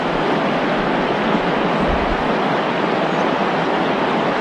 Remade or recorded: recorded